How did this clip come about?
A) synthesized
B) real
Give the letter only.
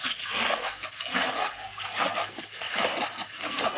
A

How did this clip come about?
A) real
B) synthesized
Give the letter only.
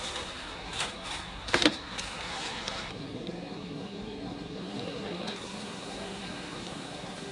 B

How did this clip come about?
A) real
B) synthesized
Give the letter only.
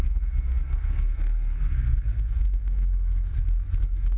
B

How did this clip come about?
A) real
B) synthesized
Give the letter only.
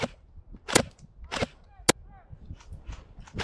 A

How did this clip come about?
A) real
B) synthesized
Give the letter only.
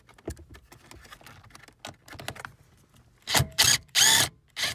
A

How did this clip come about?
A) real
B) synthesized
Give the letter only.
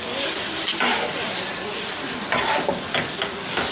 A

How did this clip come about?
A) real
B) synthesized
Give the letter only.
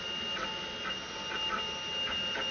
A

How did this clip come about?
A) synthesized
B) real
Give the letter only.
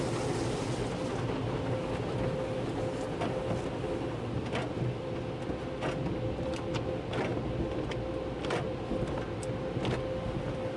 B